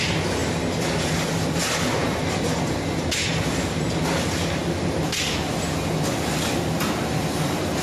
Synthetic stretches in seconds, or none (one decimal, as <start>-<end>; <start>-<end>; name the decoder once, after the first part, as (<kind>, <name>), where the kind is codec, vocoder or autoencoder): none